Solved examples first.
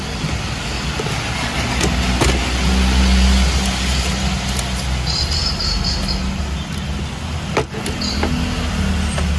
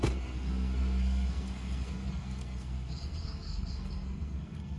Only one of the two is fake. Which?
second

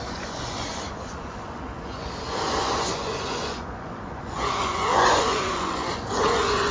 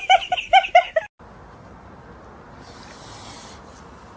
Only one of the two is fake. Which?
first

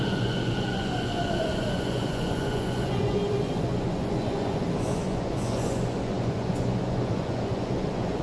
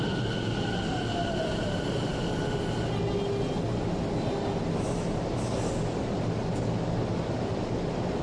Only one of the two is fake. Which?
first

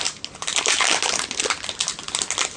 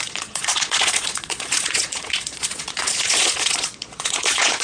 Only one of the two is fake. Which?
second